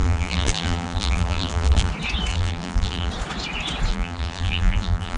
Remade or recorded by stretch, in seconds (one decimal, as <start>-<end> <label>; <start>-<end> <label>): 0.0-1.9 remade; 1.9-2.3 recorded; 2.3-3.1 remade; 3.1-3.9 recorded; 3.9-5.2 remade